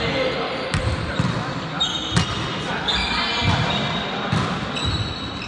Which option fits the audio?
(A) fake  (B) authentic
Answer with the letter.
B